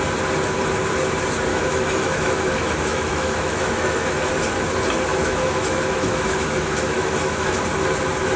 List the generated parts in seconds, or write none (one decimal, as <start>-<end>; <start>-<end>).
1.5-4.3; 5.1-7.5